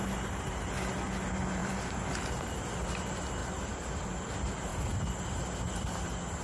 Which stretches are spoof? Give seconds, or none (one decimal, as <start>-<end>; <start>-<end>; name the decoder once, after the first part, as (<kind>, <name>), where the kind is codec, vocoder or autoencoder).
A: 0.0-0.6 (vocoder, BigVGAN v2); 1.6-2.4; 3.4-4.3

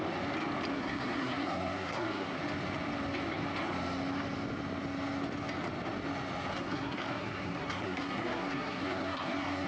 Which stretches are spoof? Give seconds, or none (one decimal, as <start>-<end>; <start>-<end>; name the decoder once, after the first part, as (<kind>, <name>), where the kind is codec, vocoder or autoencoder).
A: 0.7-2.4 (codec, SNAC); 6.5-9.7

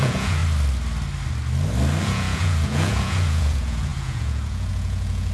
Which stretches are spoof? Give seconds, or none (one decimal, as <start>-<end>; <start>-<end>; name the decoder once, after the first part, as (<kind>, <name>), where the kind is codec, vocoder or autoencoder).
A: 0.0-0.4 (vocoder, Vocos); 2.0-5.3

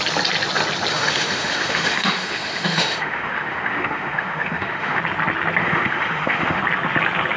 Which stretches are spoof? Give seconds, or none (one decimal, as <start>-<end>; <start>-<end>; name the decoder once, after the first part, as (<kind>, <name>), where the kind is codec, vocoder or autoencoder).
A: 0.9-5.0 (autoencoder, DAC-VAE); 5.6-6.6

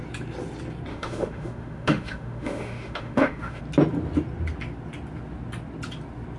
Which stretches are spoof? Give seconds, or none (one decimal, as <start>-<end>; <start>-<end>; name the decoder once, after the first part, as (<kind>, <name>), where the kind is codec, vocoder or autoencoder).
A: 0.9-3.6 (autoencoder, DAC-VAE)

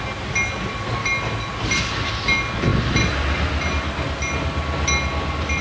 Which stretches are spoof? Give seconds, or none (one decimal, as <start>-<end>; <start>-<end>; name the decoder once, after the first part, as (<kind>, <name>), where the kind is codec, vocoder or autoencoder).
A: none